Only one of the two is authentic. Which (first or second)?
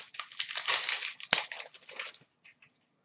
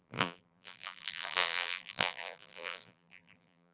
first